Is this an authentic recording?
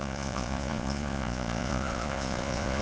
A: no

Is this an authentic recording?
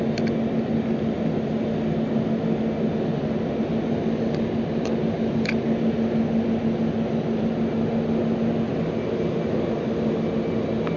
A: yes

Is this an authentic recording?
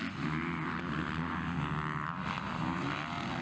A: yes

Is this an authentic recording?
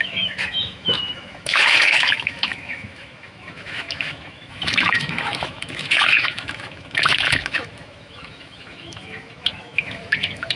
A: no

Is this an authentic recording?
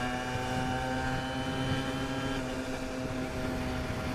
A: yes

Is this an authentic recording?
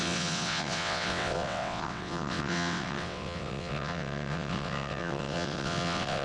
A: no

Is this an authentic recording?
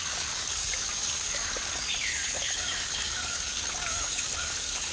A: no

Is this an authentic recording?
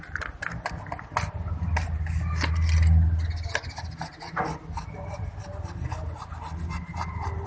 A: yes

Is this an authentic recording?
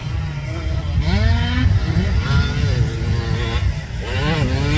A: yes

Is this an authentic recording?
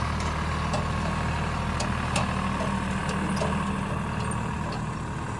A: yes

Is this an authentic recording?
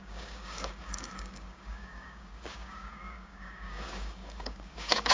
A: no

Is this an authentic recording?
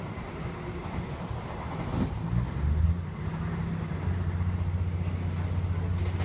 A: yes